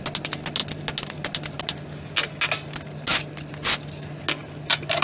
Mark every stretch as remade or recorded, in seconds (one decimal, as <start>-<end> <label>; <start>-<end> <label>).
0.0-5.0 recorded